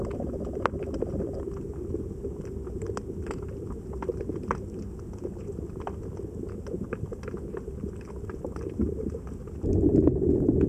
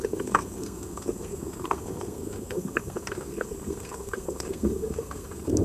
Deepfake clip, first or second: second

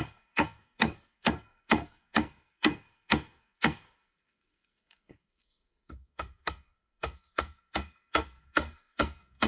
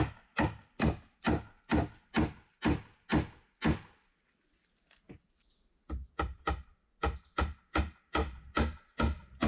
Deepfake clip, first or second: first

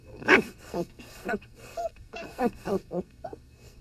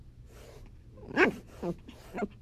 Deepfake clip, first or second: first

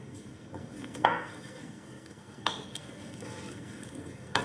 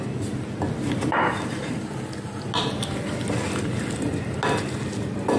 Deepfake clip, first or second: first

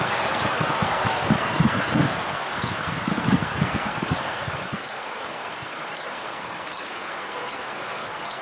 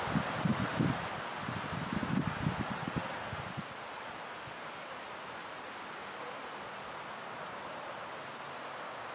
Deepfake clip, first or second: first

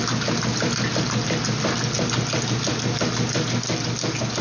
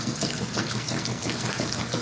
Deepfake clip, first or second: second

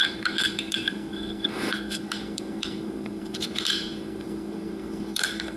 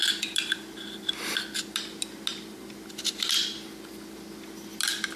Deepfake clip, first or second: first